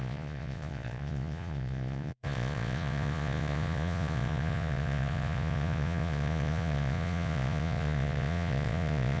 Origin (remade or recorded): remade